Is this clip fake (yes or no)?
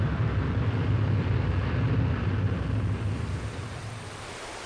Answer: no